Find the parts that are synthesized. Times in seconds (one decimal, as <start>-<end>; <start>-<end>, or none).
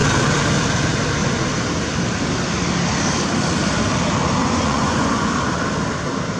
4.4-5.3